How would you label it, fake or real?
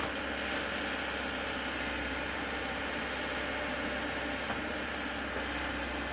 real